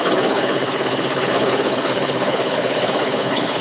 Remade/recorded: remade